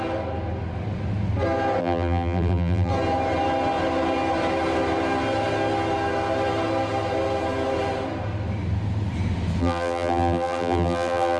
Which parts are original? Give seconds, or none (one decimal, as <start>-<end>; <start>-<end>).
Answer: 0.0-1.8; 2.9-9.6